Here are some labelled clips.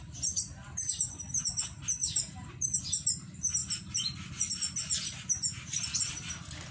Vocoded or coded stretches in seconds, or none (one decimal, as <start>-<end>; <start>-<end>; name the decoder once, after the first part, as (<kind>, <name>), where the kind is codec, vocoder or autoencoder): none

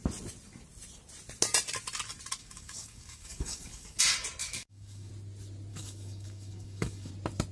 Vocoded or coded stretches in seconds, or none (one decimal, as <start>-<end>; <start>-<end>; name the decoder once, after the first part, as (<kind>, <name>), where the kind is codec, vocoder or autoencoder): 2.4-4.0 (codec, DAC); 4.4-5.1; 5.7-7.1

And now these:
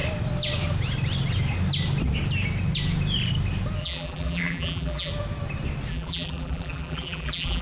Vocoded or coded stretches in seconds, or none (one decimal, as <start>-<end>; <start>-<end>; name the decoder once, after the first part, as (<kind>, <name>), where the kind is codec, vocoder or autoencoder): 3.8-5.1 (vocoder, BigVGAN v2); 5.9-7.6

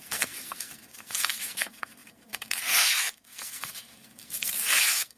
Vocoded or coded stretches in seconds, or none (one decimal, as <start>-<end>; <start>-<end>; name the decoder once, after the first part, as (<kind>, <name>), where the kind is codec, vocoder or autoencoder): 0.0-5.2 (codec, SNAC)

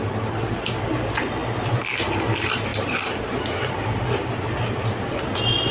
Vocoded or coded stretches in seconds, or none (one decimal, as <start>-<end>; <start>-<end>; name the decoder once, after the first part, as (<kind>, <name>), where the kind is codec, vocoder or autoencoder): none

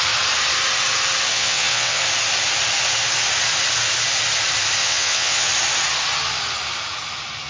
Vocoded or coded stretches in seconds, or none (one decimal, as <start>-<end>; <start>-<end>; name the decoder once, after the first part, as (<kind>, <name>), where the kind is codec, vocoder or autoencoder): 1.3-2.0 (vocoder, WaveNeXt); 4.8-5.5

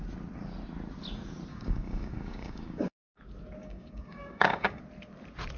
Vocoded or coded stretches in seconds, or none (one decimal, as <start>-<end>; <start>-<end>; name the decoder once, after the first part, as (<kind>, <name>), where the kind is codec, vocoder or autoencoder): 1.5-3.2 (codec, DAC); 3.6-4.8